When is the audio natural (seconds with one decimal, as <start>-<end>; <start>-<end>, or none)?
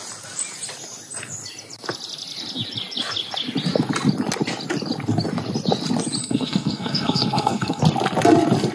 0.0-6.2; 7.8-8.7